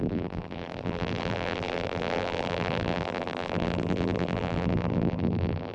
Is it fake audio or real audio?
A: fake